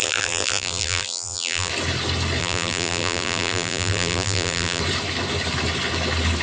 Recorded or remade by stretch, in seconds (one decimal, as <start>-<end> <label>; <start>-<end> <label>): 0.0-1.7 remade; 1.7-2.4 recorded; 2.4-4.8 remade; 4.8-6.4 recorded